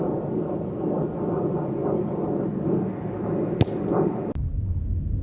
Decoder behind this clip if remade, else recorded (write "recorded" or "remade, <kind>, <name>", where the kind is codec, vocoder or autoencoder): recorded